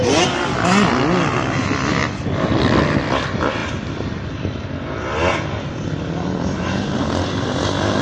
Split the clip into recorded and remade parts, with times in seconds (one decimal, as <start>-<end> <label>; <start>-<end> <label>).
0.0-2.0 recorded; 2.0-2.6 remade; 2.6-8.0 recorded